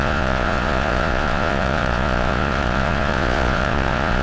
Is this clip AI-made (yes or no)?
yes